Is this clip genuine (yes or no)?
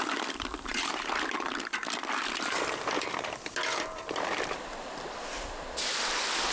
no